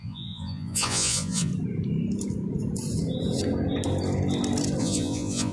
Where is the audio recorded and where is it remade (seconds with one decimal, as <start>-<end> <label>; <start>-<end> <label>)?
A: 0.0-1.5 remade; 1.5-4.8 recorded; 4.8-5.5 remade